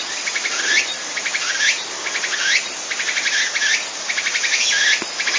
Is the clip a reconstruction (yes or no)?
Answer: no